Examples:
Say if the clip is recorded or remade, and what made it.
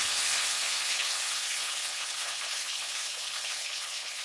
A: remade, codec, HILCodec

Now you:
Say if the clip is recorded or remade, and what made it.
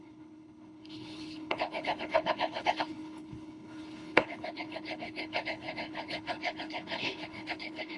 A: remade, codec, HILCodec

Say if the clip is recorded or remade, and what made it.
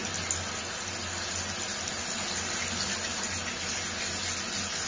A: recorded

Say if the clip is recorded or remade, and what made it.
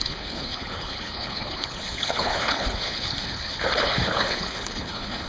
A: remade, codec, HILCodec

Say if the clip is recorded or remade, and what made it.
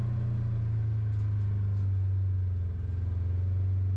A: recorded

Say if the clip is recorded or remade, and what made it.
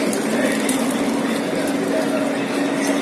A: recorded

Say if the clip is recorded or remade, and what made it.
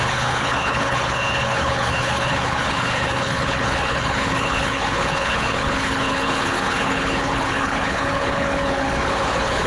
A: remade, codec, HILCodec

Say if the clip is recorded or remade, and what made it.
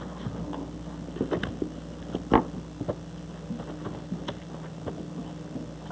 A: recorded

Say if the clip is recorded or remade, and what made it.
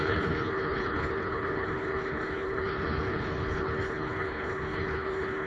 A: remade, codec, HILCodec